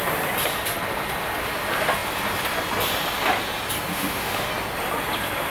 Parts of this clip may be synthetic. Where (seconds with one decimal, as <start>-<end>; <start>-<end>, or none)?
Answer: 3.9-4.5